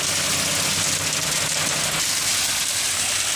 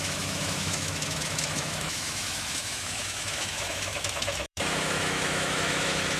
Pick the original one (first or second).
first